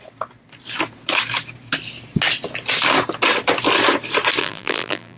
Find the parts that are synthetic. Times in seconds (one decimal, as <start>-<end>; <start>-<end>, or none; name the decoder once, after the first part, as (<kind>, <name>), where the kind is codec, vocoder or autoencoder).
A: 4.4-5.2 (vocoder, BigVGAN v2)